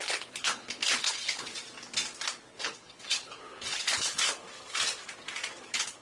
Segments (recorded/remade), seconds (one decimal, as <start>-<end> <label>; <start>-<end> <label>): 0.0-1.5 remade; 1.5-2.5 recorded; 2.5-4.5 remade; 4.5-5.6 recorded; 5.6-6.0 remade